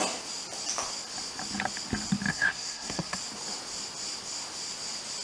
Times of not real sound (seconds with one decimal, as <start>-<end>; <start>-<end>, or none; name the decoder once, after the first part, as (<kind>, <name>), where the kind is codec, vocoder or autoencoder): 2.3-3.2 (codec, SNAC)